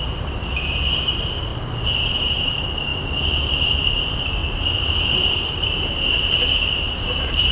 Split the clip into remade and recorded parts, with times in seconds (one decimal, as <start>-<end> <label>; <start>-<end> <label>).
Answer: 0.0-1.5 remade; 1.5-2.1 recorded; 2.1-7.5 remade